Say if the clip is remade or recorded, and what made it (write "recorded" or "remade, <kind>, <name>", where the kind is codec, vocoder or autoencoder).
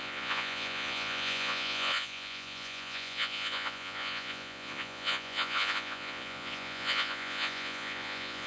remade, vocoder, Vocos